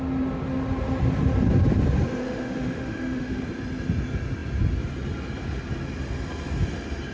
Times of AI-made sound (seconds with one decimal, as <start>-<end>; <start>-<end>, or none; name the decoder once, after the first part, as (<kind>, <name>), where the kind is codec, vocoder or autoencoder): 2.2-3.4 (autoencoder, DAC-VAE)